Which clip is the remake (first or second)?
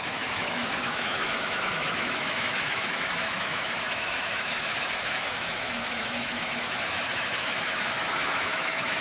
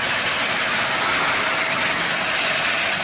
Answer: first